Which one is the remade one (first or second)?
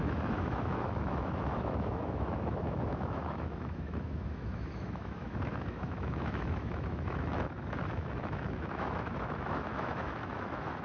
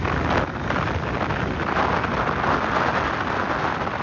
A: first